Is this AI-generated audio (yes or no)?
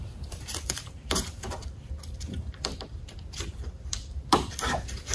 yes